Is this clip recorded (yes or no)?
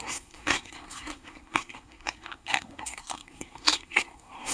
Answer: no